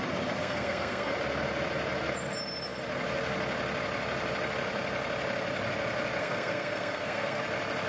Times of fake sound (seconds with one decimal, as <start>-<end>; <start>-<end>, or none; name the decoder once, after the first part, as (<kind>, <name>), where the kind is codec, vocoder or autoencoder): 0.4-1.1 (codec, SNAC); 6.2-7.4